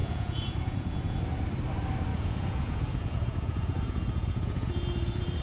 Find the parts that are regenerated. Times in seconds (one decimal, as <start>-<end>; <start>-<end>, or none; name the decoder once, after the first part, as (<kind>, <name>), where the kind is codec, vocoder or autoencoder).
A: 0.0-1.2 (vocoder, Vocos); 2.1-5.4